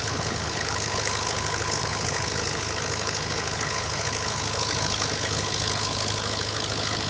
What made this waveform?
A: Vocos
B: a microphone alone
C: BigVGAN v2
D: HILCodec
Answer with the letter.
D